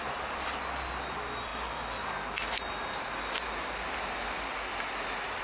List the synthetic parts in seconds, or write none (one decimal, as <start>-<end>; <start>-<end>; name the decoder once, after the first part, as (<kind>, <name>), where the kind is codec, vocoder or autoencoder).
none